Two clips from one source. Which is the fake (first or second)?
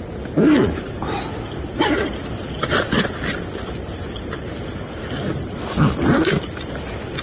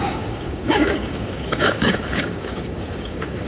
second